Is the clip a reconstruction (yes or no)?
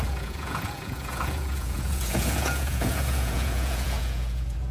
yes